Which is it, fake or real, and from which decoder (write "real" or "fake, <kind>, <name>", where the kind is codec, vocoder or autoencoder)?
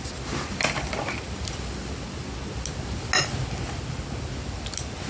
real